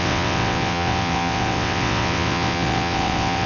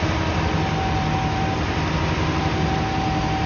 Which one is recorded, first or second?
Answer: second